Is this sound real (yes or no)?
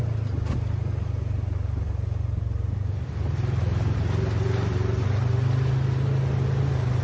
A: yes